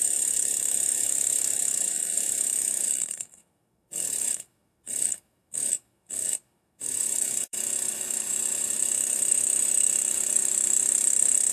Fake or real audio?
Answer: fake